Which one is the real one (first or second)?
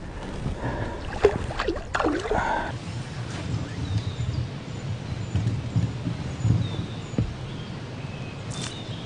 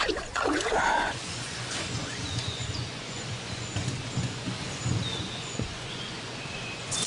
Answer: first